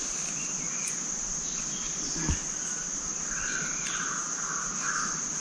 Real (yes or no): yes